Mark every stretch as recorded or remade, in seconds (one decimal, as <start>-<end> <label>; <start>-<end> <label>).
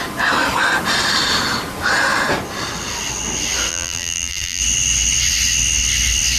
0.0-3.7 recorded; 3.7-4.6 remade; 4.6-6.4 recorded